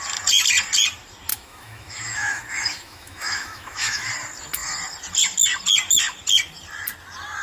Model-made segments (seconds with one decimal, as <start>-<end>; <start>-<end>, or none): 1.3-4.1